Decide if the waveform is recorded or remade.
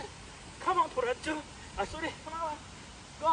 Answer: recorded